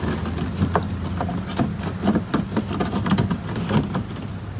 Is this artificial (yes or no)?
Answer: no